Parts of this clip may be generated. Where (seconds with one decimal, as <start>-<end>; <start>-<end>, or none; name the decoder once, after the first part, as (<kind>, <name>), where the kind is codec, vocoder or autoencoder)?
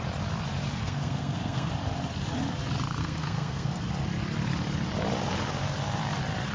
0.8-1.7 (codec, SNAC); 3.0-3.8